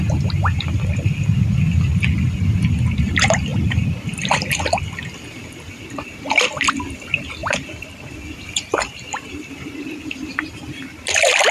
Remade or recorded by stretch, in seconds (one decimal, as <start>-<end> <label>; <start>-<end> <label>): 0.0-3.5 recorded; 3.5-4.8 remade; 4.8-7.4 recorded; 7.4-9.3 remade; 9.3-11.5 recorded